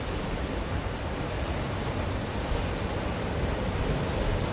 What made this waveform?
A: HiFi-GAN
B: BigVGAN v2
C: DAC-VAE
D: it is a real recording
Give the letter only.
D